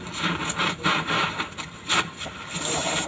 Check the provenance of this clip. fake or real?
fake